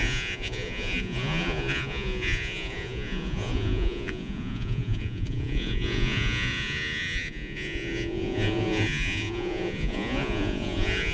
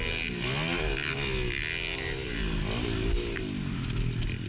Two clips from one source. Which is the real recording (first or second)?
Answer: second